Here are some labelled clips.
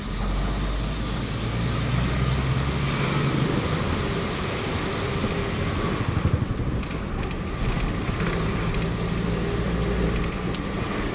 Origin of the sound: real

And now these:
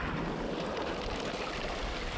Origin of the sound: real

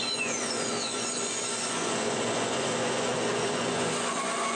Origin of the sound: fake